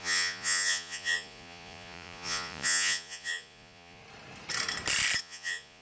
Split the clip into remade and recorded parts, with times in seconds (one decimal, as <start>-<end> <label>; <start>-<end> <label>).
0.0-4.0 remade; 4.0-5.2 recorded; 5.2-5.8 remade